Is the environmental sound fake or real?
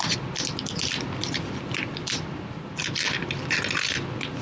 real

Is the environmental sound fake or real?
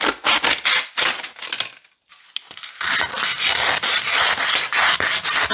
real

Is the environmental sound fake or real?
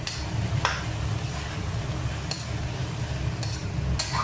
real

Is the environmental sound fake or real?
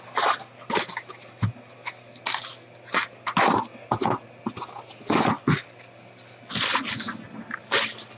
real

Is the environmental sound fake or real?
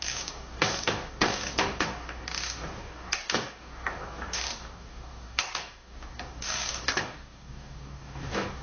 fake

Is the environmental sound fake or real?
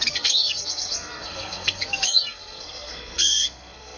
fake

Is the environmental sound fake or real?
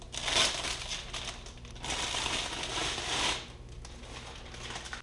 real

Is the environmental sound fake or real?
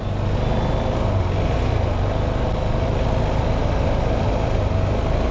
real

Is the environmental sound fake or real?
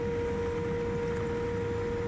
real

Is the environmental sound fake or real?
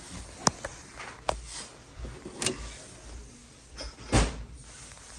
real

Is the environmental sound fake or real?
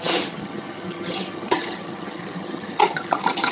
fake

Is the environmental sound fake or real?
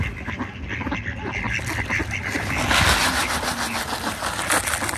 real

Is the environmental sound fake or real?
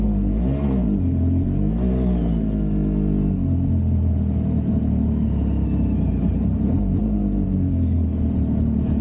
real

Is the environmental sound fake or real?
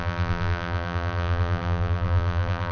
fake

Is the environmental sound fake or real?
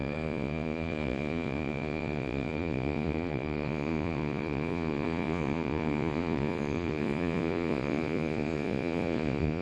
fake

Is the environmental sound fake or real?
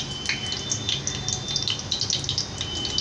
real